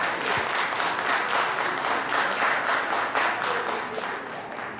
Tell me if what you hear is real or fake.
real